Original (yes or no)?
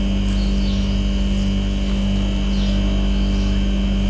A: yes